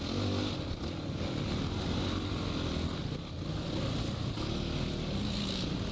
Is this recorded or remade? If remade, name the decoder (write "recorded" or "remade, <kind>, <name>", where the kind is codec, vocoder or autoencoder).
recorded